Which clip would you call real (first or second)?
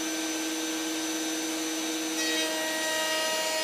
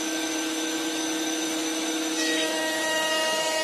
first